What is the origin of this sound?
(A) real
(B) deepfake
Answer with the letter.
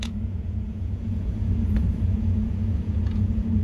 B